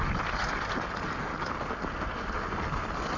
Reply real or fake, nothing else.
real